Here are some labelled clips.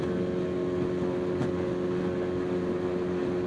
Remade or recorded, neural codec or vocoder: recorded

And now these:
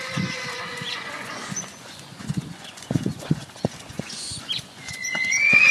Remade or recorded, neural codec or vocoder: remade, vocoder, Vocos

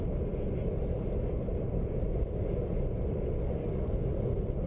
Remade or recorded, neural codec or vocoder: recorded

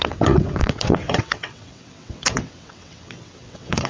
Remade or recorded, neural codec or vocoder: remade, vocoder, WaveNeXt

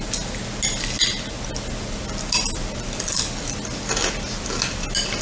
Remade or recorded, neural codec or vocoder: recorded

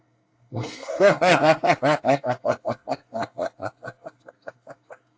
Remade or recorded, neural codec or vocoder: remade, codec, SNAC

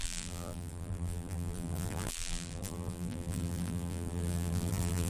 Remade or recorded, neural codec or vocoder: remade, vocoder, BigVGAN v2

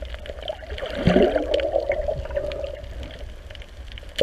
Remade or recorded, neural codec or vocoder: recorded